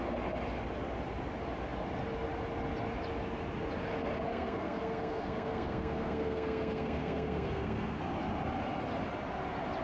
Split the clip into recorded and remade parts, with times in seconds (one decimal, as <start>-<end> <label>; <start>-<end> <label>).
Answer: 0.0-4.3 recorded; 4.3-8.0 remade; 8.0-9.8 recorded